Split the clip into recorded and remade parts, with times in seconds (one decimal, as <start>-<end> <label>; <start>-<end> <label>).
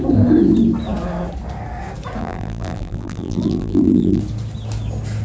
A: 0.0-2.2 recorded; 2.2-4.2 remade; 4.2-5.2 recorded